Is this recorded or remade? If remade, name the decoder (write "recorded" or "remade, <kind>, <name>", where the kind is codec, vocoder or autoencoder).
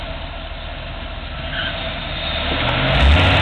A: recorded